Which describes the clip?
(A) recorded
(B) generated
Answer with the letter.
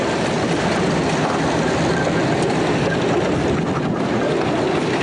A